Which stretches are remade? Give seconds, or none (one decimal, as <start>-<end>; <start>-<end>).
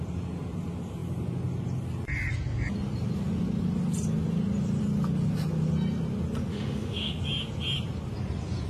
6.5-7.2